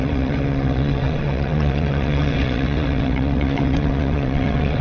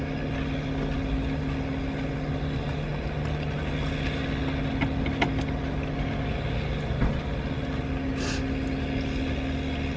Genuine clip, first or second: second